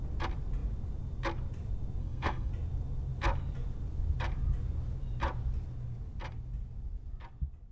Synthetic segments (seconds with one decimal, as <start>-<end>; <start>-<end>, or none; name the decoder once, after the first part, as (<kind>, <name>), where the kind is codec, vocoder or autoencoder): 2.0-2.5 (codec, SNAC)